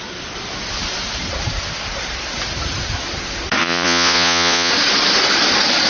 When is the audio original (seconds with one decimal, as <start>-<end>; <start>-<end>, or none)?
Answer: 0.0-3.6; 4.7-5.9

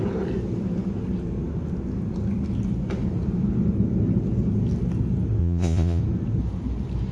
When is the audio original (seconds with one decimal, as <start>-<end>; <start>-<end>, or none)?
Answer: 0.0-5.4; 6.0-7.1

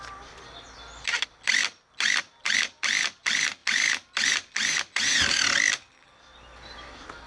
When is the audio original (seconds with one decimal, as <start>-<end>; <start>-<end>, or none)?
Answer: 0.0-7.3

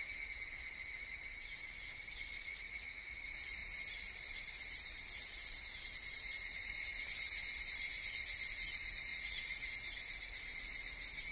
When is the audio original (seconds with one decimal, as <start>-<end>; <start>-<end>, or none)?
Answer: 0.0-2.5; 3.2-9.1; 9.7-11.3

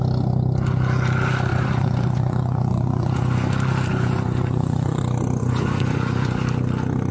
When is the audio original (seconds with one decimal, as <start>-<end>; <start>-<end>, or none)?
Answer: 0.0-1.5; 3.5-3.9; 5.0-5.4; 6.4-7.1

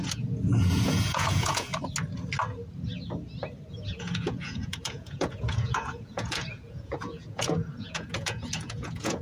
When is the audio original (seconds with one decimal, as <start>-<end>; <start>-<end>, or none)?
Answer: 1.7-3.7

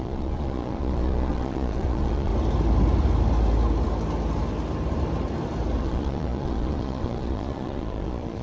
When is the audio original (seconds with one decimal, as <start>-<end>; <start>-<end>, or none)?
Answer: 2.3-5.8

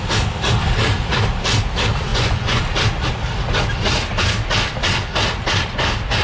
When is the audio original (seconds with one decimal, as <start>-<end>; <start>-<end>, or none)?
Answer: 0.0-2.1; 2.6-6.2